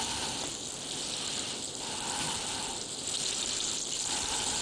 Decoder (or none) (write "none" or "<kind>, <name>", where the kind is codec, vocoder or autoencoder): none